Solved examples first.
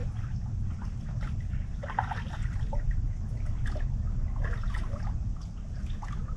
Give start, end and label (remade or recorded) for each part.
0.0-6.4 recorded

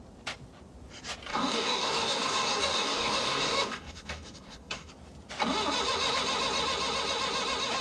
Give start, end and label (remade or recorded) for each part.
0.0-1.3 recorded; 1.3-4.9 remade; 4.9-7.8 recorded

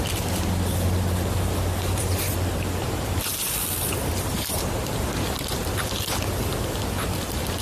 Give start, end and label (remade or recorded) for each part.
0.0-7.6 recorded